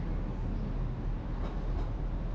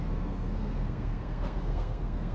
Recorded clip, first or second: first